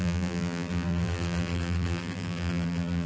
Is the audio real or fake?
fake